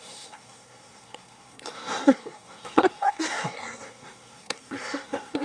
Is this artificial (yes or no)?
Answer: yes